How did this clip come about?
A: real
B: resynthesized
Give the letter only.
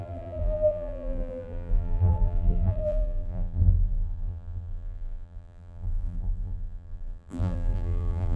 B